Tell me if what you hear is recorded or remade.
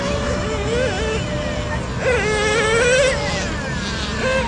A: recorded